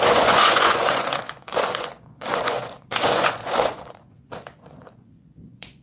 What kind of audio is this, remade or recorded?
remade